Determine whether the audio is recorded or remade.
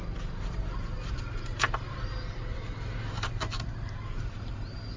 remade